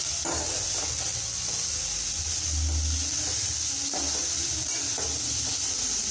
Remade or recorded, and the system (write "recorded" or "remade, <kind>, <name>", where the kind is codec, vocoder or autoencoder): recorded